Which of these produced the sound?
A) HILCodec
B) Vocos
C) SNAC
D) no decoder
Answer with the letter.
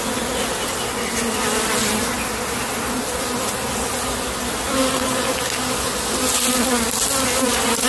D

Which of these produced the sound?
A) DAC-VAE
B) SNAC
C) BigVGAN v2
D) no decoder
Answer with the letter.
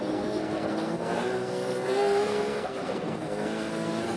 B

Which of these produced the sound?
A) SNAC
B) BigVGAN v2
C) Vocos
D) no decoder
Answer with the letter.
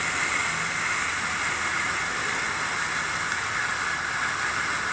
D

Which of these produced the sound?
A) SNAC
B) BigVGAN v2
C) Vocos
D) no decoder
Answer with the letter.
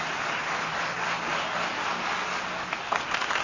D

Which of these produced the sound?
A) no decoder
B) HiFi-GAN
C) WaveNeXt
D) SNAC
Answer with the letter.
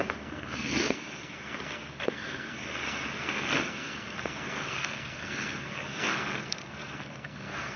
D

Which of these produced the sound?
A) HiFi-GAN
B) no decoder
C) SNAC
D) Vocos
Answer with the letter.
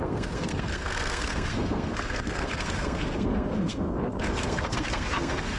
C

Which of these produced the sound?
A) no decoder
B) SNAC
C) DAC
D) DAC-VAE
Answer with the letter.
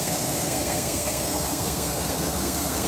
B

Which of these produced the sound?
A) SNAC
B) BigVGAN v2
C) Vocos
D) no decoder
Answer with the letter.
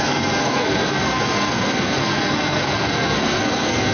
A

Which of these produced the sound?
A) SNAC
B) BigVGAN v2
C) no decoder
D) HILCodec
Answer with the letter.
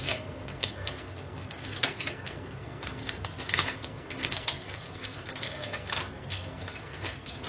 A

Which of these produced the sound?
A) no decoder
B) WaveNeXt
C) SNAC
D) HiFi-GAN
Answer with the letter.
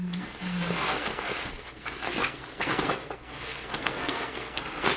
C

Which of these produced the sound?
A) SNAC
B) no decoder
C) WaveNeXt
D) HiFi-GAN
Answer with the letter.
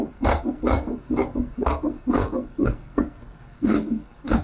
A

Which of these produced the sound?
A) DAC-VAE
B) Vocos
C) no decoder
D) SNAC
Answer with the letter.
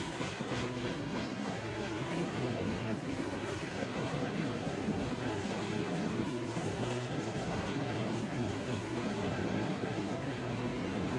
D